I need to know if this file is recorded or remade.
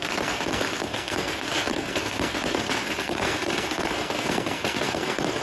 remade